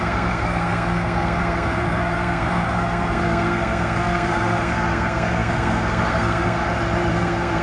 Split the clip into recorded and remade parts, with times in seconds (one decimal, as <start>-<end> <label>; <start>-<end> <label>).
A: 0.0-6.6 remade; 6.6-7.1 recorded; 7.1-7.6 remade